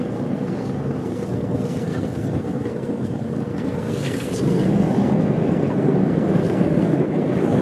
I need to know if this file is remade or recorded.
remade